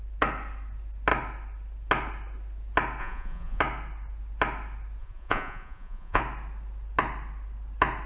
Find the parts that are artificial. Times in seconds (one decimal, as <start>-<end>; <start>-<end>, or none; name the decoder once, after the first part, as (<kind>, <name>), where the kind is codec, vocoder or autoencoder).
3.0-3.6 (vocoder, Vocos); 5.0-6.2